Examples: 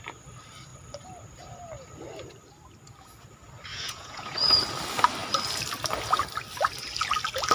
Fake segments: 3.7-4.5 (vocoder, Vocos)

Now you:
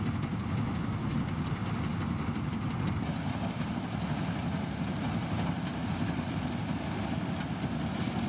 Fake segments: none